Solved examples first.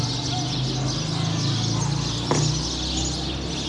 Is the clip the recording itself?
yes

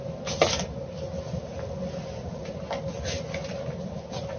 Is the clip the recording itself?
yes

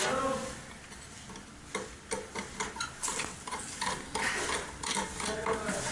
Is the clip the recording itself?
yes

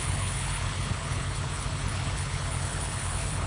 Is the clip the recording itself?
no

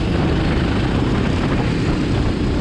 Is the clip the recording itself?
yes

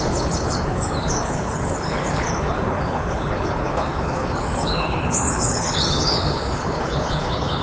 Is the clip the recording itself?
no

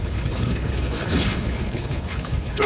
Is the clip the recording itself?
no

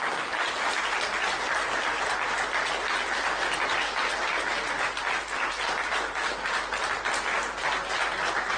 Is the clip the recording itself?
yes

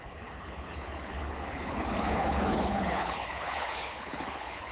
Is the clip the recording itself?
no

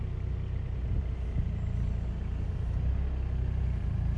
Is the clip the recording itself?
yes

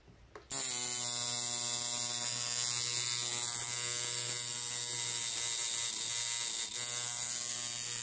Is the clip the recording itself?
yes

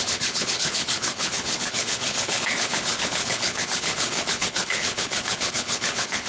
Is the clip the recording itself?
no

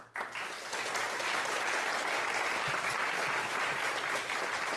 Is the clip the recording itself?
yes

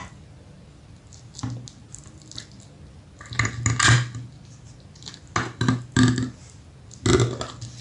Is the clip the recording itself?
yes